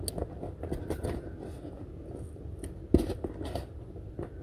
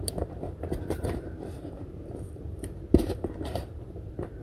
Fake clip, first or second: second